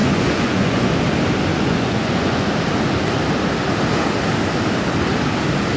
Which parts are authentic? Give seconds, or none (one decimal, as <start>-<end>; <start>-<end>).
0.9-1.5; 2.5-5.8